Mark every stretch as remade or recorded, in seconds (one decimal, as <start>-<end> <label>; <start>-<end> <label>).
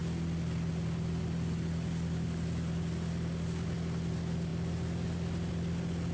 0.0-6.1 recorded